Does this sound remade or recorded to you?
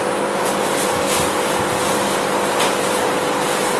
remade